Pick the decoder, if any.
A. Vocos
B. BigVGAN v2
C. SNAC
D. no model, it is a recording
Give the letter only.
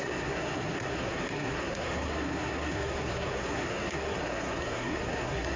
C